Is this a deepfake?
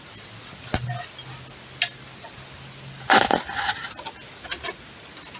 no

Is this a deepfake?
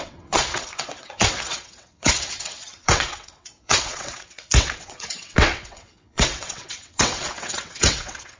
yes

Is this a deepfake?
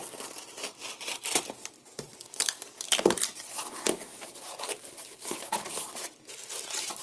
no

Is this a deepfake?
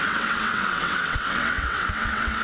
yes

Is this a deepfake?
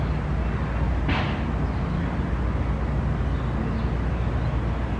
no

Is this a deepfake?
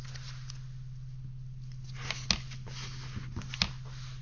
no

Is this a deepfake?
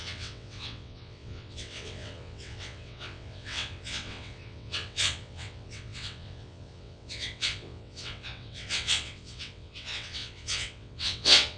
yes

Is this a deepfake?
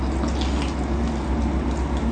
no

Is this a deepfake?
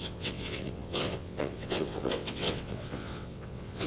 yes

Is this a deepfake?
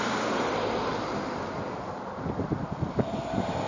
no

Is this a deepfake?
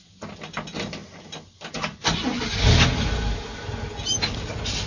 no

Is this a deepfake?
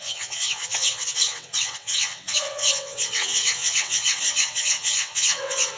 yes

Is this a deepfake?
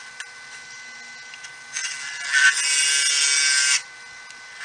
no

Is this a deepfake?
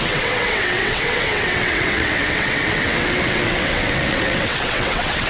yes